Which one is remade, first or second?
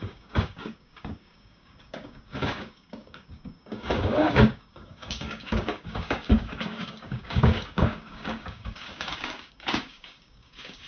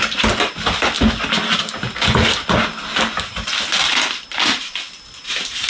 first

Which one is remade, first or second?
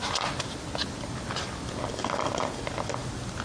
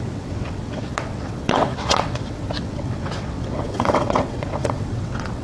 second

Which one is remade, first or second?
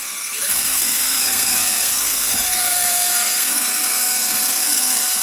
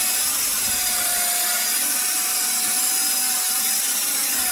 first